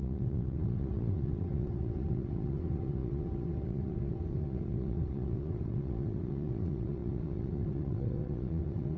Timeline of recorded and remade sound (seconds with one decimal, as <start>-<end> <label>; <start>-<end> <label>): 0.0-9.0 remade

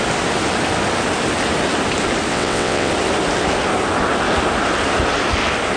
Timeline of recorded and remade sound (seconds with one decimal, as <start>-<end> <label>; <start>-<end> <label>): 0.0-2.3 recorded; 2.3-2.9 remade; 2.9-5.8 recorded

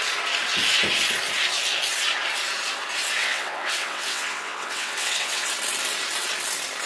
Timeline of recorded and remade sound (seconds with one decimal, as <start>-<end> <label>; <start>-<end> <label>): 0.0-3.2 recorded; 3.2-5.5 remade; 5.5-6.9 recorded

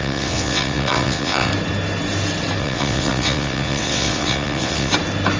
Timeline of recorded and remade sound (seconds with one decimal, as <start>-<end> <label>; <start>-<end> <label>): 0.0-1.5 remade; 1.5-2.6 recorded; 2.6-4.9 remade; 4.9-5.4 recorded

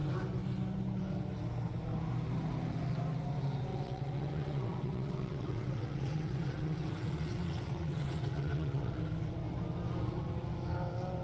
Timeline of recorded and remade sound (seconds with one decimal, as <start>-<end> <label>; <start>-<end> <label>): 0.0-3.7 recorded; 3.7-9.0 remade; 9.0-11.2 recorded

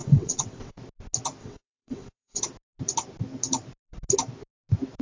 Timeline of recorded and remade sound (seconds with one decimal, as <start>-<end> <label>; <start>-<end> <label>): 0.0-0.7 remade; 0.7-1.4 recorded; 1.4-2.4 remade; 2.4-5.0 recorded

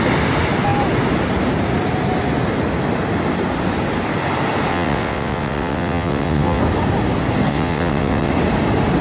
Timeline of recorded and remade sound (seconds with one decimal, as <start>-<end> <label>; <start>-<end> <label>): 0.0-4.7 recorded; 4.7-6.6 remade; 6.6-7.5 recorded; 7.5-8.3 remade; 8.3-9.0 recorded